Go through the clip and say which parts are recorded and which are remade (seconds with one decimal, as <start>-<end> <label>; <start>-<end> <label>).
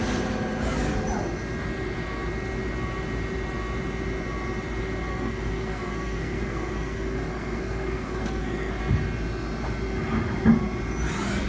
0.0-5.1 recorded; 5.1-8.8 remade; 8.8-11.5 recorded